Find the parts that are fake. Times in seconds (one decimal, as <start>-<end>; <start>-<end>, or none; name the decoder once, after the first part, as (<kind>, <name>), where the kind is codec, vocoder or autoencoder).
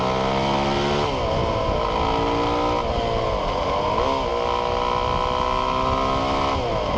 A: none